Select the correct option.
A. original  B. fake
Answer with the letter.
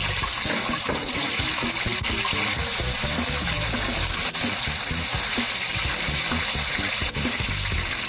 A